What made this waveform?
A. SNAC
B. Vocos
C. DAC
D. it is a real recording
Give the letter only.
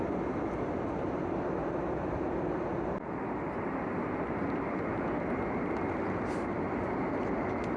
D